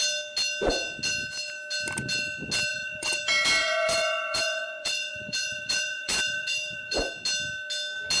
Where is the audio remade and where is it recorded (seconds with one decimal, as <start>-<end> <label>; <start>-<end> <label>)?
0.0-2.7 recorded; 2.7-3.2 remade; 3.2-3.6 recorded; 3.6-7.1 remade; 7.1-8.2 recorded